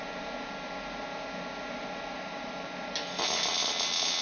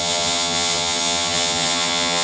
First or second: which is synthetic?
second